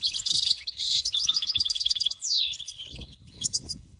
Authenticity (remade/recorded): remade